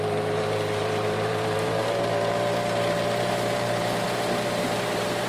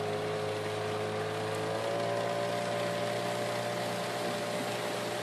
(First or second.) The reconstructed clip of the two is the first